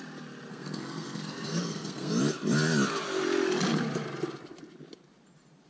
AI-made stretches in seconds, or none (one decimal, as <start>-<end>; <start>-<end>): 0.5-2.1